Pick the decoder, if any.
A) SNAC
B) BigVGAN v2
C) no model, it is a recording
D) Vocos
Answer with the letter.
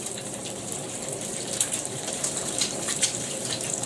B